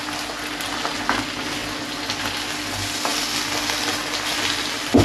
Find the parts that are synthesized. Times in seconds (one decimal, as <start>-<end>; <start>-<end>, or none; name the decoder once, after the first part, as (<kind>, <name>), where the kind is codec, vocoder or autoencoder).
none